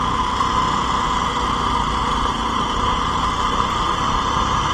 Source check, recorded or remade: recorded